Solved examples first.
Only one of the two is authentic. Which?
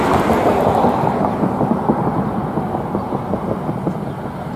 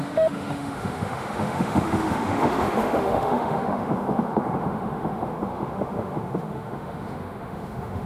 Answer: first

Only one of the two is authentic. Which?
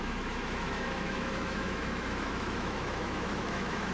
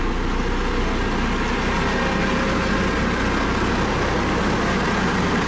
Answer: second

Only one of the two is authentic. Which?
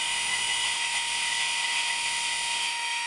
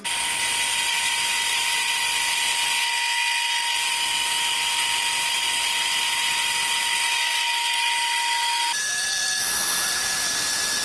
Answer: second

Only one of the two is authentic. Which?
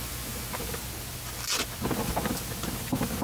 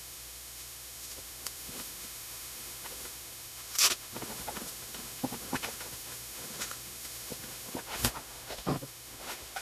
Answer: first